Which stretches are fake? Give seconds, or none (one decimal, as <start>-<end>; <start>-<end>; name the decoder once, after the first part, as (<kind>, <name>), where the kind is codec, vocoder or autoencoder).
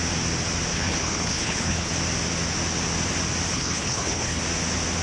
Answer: 0.7-1.9 (codec, HILCodec); 3.5-4.4